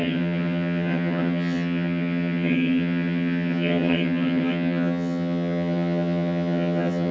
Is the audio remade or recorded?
remade